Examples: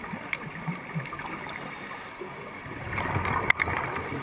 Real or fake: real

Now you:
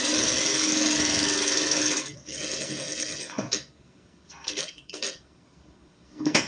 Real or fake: fake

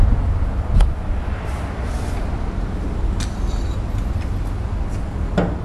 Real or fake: real